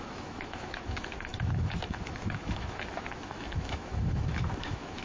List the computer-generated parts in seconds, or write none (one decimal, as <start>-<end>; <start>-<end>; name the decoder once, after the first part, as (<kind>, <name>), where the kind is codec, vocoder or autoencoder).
0.0-5.0 (autoencoder, DAC-VAE)